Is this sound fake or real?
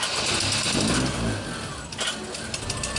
real